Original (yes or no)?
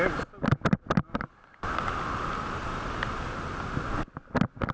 yes